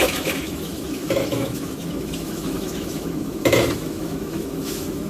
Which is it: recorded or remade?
remade